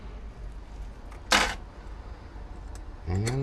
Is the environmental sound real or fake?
real